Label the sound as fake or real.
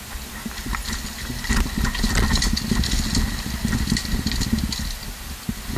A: real